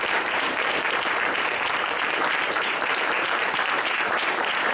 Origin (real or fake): fake